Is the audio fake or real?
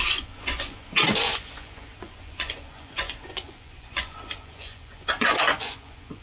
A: fake